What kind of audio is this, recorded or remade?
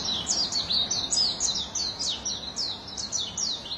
recorded